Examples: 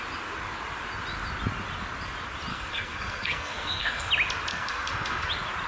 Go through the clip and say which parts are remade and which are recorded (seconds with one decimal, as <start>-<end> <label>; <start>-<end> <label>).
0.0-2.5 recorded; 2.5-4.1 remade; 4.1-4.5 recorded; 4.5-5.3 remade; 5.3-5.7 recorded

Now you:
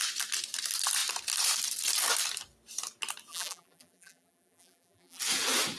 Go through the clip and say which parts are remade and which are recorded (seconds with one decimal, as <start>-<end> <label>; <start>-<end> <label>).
0.0-3.3 recorded; 3.3-5.2 remade; 5.2-5.8 recorded

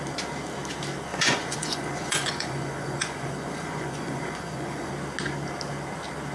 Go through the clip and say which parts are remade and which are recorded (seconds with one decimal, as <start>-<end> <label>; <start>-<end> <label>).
0.0-1.1 recorded; 1.1-4.9 remade; 4.9-6.3 recorded

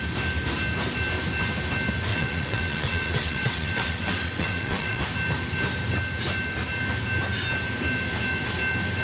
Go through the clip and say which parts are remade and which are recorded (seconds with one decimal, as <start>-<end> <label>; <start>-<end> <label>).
0.0-2.1 recorded; 2.1-5.0 remade; 5.0-9.0 recorded

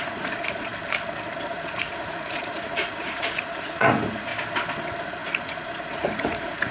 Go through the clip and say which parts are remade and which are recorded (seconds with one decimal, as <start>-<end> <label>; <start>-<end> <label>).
0.0-0.7 remade; 0.7-1.5 recorded; 1.5-4.3 remade; 4.3-4.8 recorded; 4.8-6.7 remade